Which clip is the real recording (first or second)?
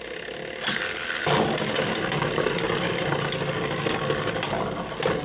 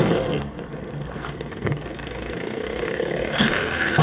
first